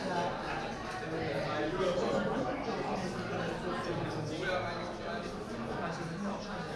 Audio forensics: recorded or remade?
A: recorded